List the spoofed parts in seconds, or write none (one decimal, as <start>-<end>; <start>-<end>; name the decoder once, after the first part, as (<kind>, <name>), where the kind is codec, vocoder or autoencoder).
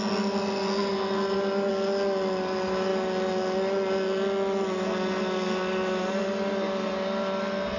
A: none